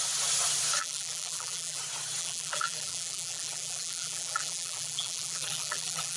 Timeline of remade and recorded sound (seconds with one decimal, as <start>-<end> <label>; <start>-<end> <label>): 0.0-0.8 recorded; 0.8-1.8 remade; 1.8-2.2 recorded; 2.2-6.2 remade